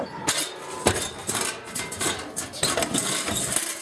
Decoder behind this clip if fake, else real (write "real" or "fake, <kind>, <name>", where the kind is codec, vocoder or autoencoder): real